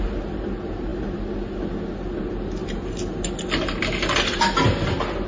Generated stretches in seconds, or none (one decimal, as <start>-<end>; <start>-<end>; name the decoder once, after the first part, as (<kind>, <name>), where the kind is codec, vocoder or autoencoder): none